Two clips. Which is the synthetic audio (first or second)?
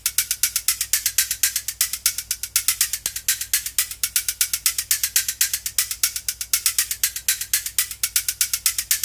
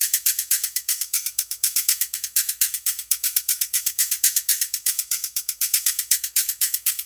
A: second